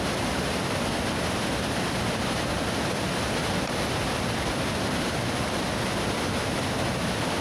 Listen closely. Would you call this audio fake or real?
real